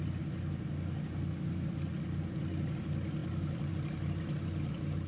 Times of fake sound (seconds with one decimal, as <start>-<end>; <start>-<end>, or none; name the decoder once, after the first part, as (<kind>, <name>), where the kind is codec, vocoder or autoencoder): none